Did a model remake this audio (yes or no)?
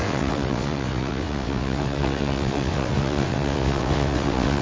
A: yes